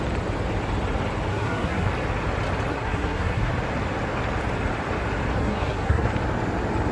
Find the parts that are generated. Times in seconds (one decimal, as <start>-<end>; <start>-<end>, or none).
1.3-1.9; 2.7-3.5; 5.4-6.1